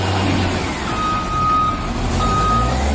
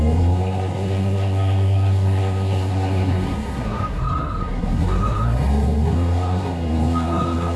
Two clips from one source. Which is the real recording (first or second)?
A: first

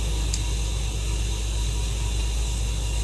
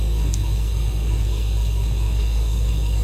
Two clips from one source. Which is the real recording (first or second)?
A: first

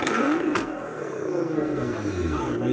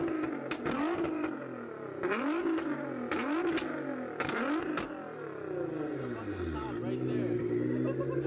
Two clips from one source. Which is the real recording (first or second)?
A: second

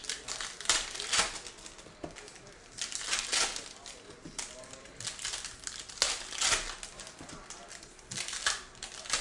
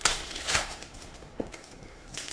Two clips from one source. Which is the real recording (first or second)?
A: first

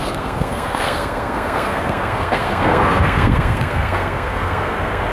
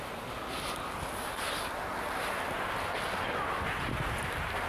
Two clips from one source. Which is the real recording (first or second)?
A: second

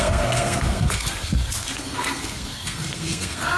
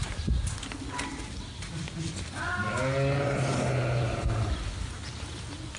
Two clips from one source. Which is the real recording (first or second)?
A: second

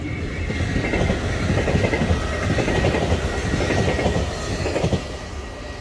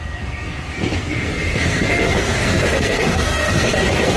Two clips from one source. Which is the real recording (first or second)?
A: first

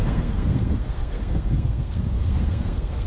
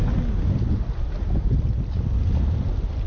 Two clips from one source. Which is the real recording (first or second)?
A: second